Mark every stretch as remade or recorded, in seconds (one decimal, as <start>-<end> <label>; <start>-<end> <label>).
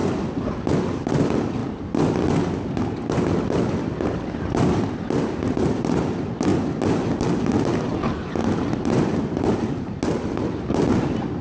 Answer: 0.0-0.7 remade; 0.7-8.4 recorded; 8.4-9.5 remade; 9.5-11.4 recorded